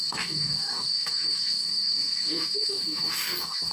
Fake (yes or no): yes